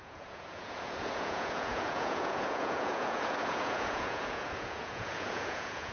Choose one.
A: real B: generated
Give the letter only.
B